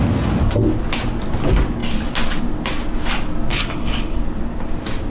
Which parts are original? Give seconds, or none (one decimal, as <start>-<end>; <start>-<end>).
0.0-3.5; 4.2-5.1